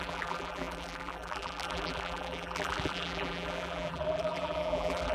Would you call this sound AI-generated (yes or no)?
yes